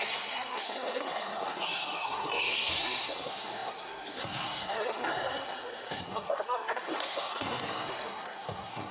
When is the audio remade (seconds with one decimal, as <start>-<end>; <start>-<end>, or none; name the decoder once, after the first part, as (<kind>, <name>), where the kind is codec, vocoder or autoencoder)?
0.0-8.9 (codec, SNAC)